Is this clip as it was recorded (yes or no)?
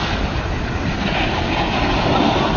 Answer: yes